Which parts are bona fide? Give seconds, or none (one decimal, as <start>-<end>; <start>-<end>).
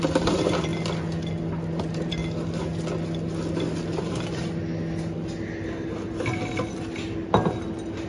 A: 0.7-1.8; 2.2-4.0; 4.6-8.1